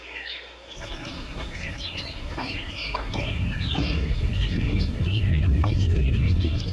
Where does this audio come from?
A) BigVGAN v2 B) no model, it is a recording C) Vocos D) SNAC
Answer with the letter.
D